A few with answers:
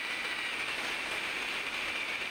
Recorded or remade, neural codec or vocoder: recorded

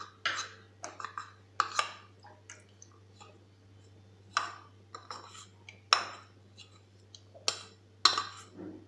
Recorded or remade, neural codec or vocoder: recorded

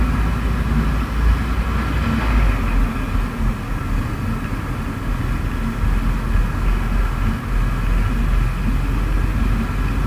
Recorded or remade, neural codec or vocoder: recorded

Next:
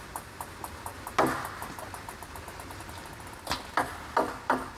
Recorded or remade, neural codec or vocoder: recorded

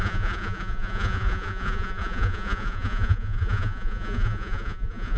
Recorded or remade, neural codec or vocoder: remade, vocoder, Vocos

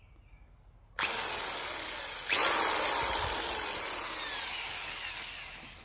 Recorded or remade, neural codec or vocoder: recorded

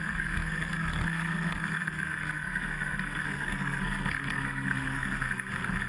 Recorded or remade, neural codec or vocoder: remade, codec, SNAC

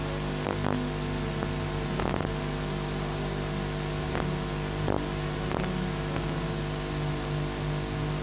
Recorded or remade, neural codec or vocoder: recorded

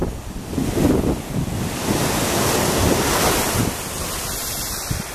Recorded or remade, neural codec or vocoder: recorded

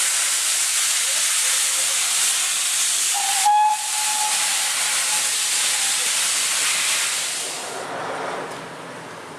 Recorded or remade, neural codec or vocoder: recorded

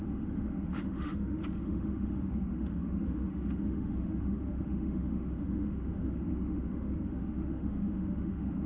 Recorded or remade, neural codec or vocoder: remade, autoencoder, DAC-VAE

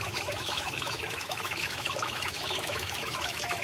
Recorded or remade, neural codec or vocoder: remade, autoencoder, DAC-VAE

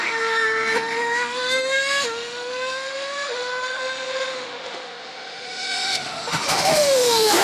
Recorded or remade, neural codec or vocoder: remade, autoencoder, DAC-VAE